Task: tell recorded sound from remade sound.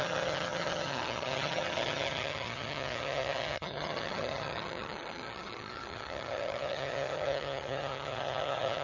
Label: remade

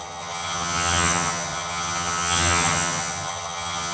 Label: remade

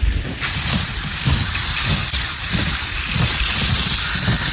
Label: recorded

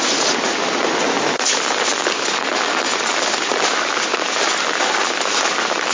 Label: recorded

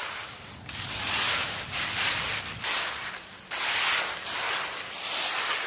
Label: recorded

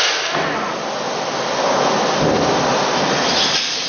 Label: recorded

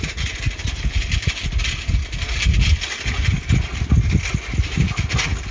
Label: recorded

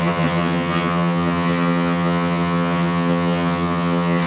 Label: remade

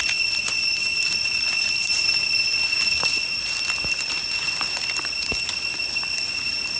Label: recorded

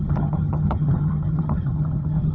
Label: remade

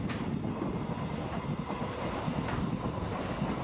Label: recorded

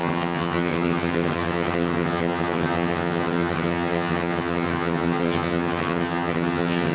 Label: remade